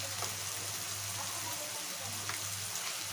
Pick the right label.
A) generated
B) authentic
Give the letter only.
B